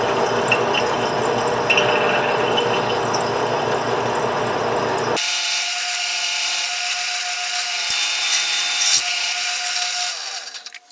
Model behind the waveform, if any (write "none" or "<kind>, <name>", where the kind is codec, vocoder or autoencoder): none